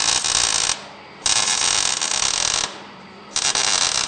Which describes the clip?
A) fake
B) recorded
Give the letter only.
B